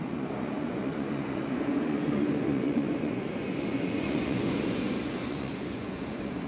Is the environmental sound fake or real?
fake